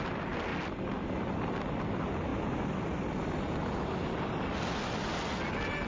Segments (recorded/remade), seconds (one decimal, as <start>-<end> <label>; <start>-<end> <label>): 0.0-5.9 recorded